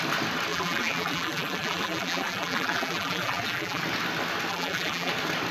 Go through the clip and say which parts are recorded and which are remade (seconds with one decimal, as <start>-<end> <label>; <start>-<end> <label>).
0.0-0.5 recorded; 0.5-3.8 remade; 3.8-4.5 recorded; 4.5-5.1 remade; 5.1-5.5 recorded